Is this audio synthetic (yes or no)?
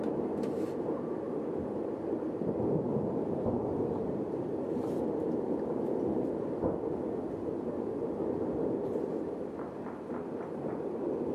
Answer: yes